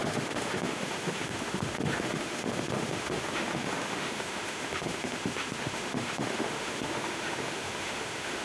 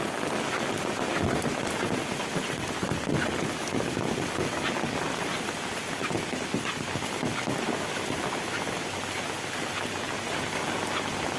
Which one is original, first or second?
second